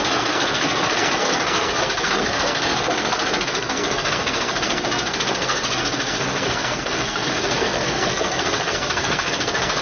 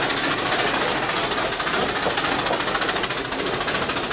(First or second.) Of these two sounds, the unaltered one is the second